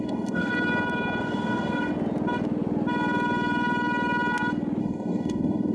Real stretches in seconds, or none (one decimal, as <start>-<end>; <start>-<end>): 0.5-1.2; 1.9-4.8

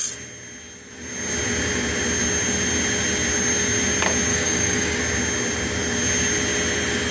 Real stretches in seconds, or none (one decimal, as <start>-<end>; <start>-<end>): 0.0-4.3; 5.0-7.1

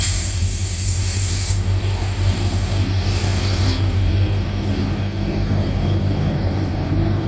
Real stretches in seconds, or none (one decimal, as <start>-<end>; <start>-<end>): none

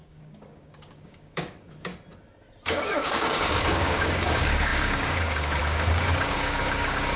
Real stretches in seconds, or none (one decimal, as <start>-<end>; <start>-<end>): 1.9-2.7

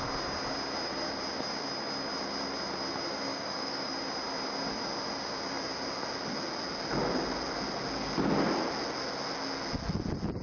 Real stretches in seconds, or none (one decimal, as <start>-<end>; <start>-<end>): 0.0-3.3; 3.9-10.4

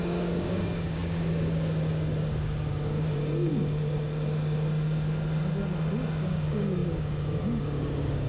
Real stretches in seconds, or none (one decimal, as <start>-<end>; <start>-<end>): 3.5-6.2